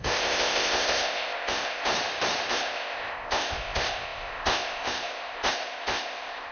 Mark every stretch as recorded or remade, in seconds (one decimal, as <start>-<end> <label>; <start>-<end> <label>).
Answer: 0.0-1.9 remade; 1.9-2.5 recorded; 2.5-6.5 remade